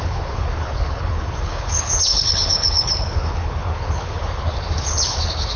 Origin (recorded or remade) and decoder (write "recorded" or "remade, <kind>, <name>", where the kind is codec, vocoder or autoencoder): remade, codec, HILCodec